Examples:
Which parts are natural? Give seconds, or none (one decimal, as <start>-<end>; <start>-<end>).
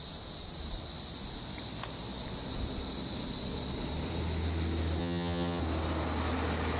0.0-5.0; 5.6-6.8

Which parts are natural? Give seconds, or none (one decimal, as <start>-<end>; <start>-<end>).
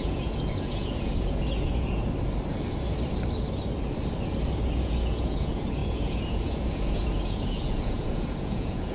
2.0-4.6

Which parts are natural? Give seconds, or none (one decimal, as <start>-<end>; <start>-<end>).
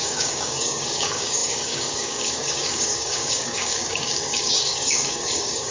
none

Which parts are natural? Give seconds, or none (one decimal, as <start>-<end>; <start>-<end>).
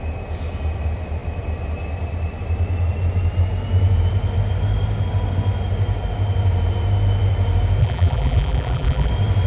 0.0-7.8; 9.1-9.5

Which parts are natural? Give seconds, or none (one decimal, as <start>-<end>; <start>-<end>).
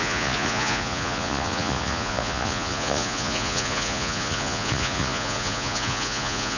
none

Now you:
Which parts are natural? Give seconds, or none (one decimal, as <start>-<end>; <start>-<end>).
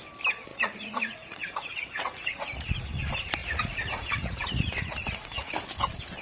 0.0-0.5; 3.0-3.4; 5.5-6.2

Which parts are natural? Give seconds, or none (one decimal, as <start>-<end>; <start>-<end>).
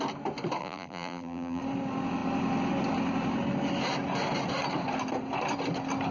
0.0-0.6; 1.6-6.1